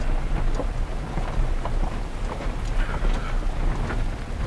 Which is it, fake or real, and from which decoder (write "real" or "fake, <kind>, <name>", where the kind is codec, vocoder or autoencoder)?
real